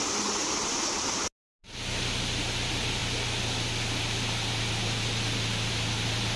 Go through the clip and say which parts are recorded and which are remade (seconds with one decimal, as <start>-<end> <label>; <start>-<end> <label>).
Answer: 0.0-0.4 recorded; 0.4-1.1 remade; 1.1-6.4 recorded